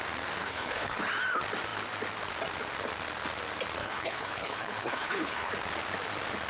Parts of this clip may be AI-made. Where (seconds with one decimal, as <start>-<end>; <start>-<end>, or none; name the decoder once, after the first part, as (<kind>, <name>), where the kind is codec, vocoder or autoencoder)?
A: 0.4-1.0 (codec, HILCodec); 3.8-5.5